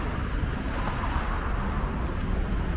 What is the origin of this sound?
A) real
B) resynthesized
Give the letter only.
A